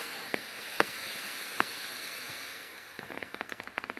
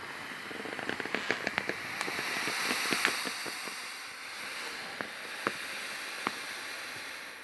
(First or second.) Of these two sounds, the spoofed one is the first